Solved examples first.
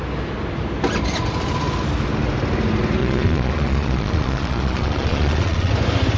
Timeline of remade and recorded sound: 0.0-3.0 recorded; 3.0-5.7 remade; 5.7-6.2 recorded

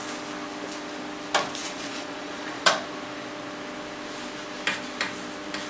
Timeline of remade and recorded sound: 0.0-1.6 recorded; 1.6-2.7 remade; 2.7-5.7 recorded